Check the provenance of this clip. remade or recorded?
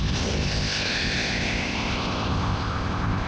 remade